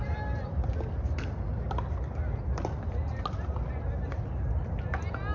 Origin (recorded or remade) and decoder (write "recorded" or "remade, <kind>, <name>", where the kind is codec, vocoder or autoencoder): recorded